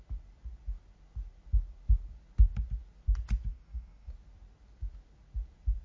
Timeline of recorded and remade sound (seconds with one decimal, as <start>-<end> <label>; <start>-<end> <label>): 0.0-3.5 recorded; 3.5-4.1 remade; 4.1-5.8 recorded